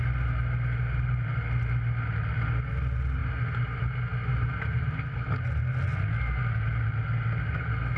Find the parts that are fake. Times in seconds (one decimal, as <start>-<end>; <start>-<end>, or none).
none